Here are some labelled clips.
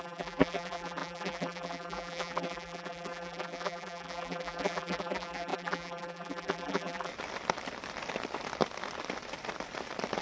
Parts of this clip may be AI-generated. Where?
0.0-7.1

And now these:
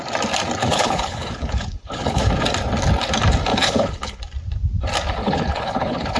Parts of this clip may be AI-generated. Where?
0.6-2.3; 3.5-4.2; 5.2-6.2

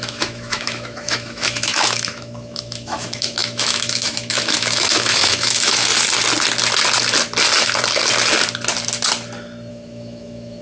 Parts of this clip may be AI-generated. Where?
0.0-5.9; 9.7-10.6

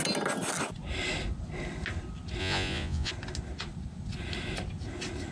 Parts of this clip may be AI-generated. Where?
2.4-3.1

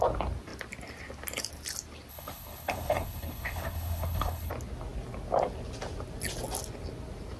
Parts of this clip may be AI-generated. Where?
2.1-4.5

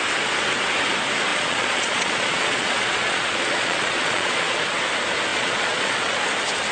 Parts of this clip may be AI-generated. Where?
1.3-4.6; 5.3-6.2

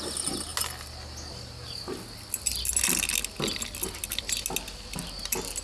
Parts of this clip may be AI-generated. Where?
none